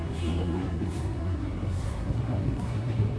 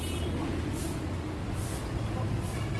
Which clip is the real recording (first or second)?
second